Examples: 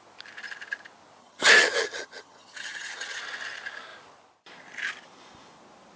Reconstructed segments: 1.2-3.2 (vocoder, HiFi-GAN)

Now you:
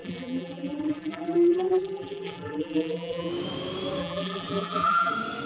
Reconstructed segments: 0.0-3.3 (vocoder, BigVGAN v2); 4.0-5.1

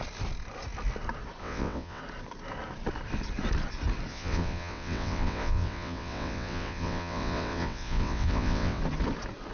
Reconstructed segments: 1.4-2.0 (vocoder, WaveNeXt); 4.1-8.8

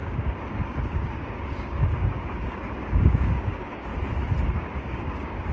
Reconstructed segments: 0.0-3.9 (codec, DAC); 4.5-5.5

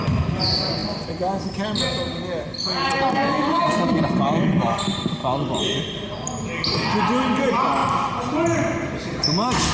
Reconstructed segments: 3.1-4.0 (codec, SNAC)

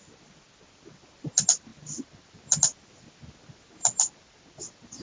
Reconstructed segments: none